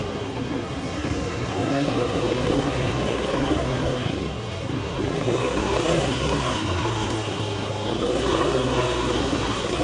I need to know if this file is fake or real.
fake